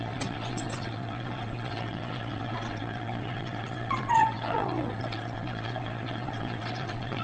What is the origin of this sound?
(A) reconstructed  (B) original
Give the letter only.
A